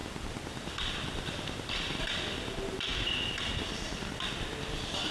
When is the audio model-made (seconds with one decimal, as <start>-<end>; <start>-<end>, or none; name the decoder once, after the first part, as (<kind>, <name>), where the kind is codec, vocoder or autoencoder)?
0.0-2.0 (vocoder, BigVGAN v2); 2.9-4.1